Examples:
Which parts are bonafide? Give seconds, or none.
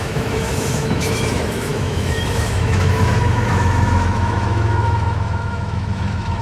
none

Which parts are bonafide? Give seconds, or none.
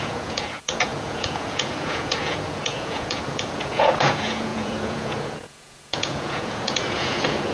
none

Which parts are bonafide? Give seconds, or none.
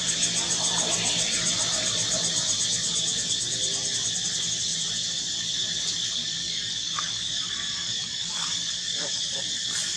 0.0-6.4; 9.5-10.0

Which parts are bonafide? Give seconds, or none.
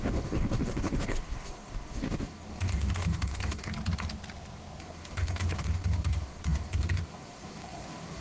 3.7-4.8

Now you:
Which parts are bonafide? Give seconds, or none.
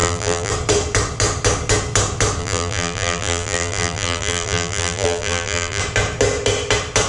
0.5-2.4; 5.8-7.1